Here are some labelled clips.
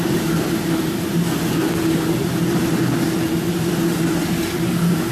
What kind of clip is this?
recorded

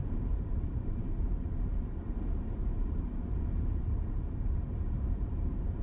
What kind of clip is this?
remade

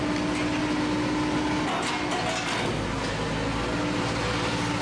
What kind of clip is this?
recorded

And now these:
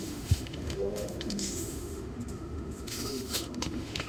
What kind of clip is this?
remade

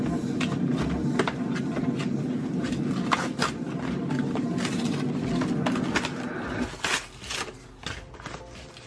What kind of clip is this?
recorded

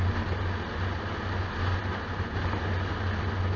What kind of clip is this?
recorded